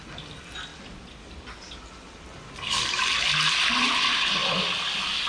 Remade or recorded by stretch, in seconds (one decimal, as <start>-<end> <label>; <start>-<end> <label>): 0.0-5.3 recorded